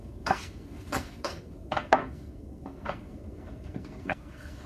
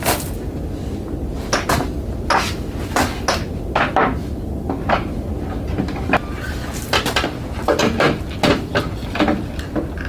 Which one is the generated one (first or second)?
first